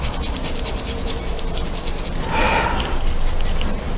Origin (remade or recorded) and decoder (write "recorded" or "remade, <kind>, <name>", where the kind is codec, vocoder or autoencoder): recorded